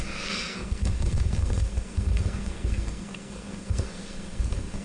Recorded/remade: remade